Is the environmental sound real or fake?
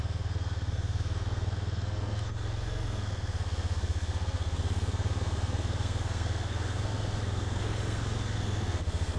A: fake